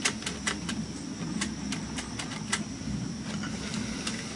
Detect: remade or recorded recorded